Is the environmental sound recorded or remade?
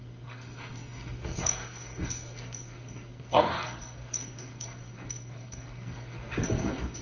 remade